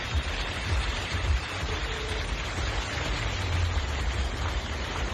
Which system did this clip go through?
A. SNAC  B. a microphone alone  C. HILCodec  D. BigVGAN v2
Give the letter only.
D